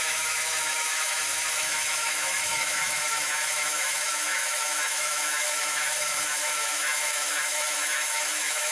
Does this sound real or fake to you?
fake